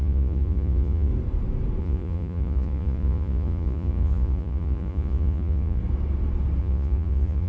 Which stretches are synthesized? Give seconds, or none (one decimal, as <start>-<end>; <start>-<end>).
0.0-1.1; 1.8-5.8; 6.6-7.5